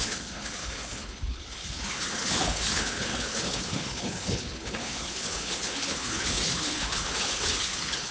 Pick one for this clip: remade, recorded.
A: remade